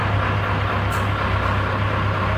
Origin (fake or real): real